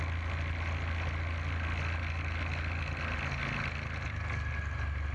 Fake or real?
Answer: real